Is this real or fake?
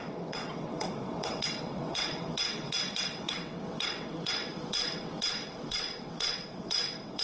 fake